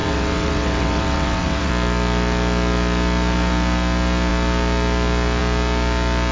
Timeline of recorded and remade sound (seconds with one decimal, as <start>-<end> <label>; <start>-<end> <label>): 0.0-1.7 remade; 1.7-6.3 recorded

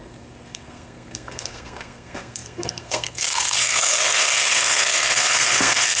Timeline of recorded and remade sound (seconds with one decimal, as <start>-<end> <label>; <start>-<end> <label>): 0.0-6.0 remade

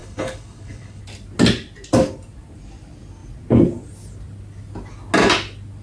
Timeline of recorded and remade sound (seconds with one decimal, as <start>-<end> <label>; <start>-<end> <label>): 0.0-1.0 remade; 1.0-5.8 recorded

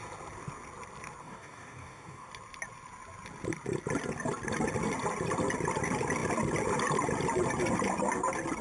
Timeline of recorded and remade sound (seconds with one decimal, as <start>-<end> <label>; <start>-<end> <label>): 0.0-1.2 recorded; 1.2-2.3 remade; 2.3-8.6 recorded